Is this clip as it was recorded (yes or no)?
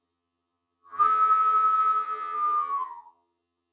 no